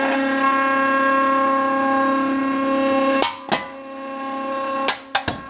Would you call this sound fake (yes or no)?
no